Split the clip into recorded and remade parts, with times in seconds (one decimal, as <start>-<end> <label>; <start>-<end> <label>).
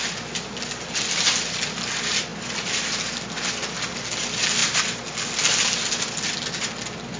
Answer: 0.0-7.2 recorded